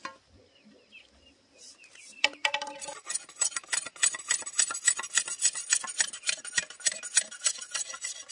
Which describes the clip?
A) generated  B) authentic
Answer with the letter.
B